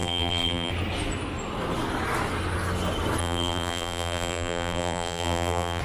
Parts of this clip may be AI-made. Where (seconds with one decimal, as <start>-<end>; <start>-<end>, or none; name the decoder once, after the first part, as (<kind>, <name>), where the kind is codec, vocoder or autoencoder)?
0.0-0.7 (vocoder, BigVGAN v2); 3.2-5.8